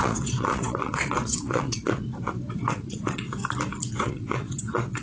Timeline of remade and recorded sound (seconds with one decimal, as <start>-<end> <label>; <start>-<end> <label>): 0.0-2.0 remade; 2.0-2.5 recorded; 2.5-3.4 remade; 3.4-3.9 recorded; 3.9-5.0 remade